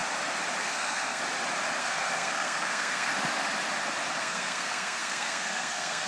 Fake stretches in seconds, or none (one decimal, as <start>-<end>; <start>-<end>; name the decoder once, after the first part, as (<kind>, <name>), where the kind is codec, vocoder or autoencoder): 0.6-1.2 (codec, SNAC); 1.8-3.1; 4.2-6.1